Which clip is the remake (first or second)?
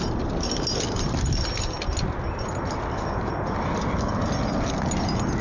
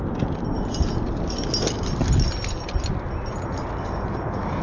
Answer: first